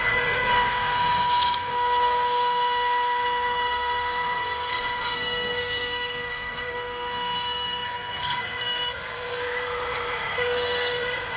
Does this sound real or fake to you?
fake